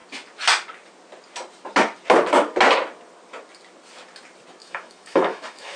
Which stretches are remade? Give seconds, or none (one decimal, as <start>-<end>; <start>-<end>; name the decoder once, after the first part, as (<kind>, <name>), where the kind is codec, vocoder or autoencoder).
4.6-5.8 (autoencoder, DAC-VAE)